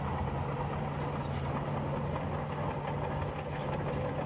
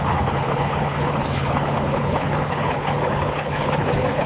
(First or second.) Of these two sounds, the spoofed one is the second